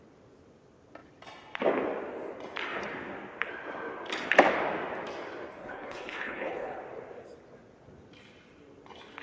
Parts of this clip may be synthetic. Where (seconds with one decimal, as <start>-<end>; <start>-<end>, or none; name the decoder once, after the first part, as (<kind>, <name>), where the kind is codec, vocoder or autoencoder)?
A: 5.6-6.8 (codec, HILCodec)